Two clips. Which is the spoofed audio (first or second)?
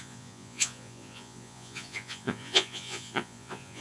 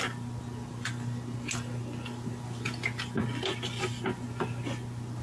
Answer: first